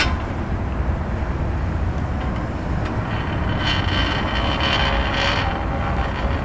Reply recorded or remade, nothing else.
recorded